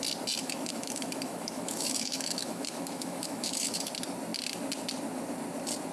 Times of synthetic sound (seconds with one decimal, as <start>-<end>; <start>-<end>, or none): 0.4-3.9